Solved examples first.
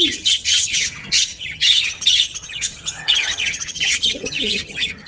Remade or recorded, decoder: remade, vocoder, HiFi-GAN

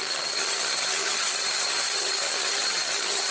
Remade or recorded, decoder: remade, vocoder, HiFi-GAN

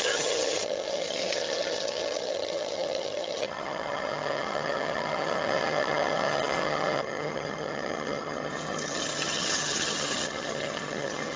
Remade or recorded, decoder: remade, vocoder, HiFi-GAN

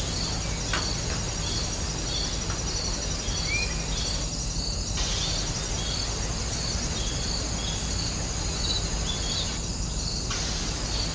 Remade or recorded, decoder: recorded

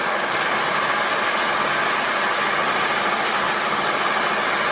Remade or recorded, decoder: recorded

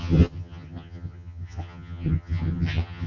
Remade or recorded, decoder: remade, vocoder, HiFi-GAN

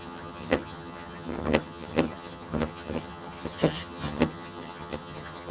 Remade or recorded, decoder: remade, vocoder, HiFi-GAN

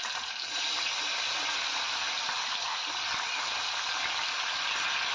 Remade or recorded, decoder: recorded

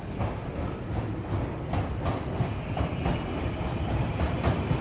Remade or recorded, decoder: recorded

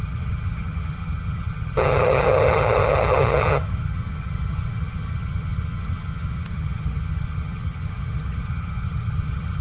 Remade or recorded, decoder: remade, vocoder, HiFi-GAN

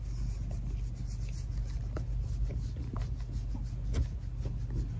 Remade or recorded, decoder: recorded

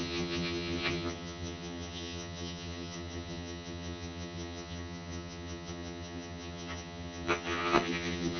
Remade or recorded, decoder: remade, vocoder, HiFi-GAN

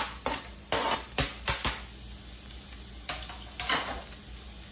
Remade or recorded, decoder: recorded